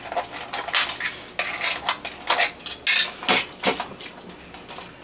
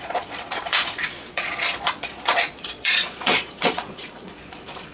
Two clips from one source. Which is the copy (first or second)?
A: second